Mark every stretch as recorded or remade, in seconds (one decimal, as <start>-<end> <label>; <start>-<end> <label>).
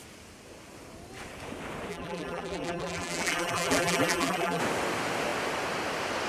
0.0-1.9 recorded; 1.9-4.6 remade; 4.6-6.3 recorded